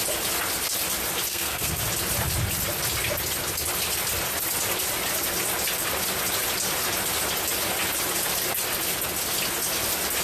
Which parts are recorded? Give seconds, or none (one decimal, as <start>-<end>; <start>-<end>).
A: 0.0-1.3; 1.8-10.2